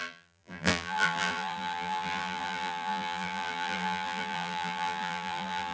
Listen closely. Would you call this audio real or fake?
fake